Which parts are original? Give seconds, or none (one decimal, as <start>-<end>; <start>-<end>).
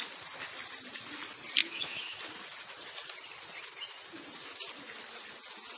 0.0-1.6; 2.2-5.8